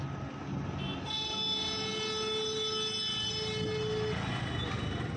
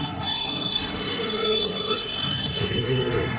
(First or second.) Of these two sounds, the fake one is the second